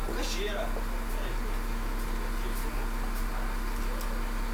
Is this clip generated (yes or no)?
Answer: no